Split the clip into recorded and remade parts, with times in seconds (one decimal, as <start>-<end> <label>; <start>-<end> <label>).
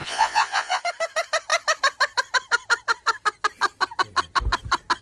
0.0-0.8 remade; 0.8-5.0 recorded